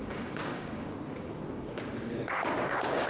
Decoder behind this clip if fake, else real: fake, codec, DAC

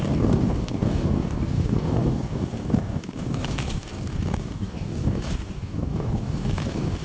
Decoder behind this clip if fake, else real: fake, codec, DAC